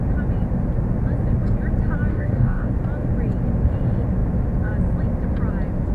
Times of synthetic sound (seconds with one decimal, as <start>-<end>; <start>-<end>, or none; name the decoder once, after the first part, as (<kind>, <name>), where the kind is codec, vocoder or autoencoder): 2.1-2.7 (codec, DAC)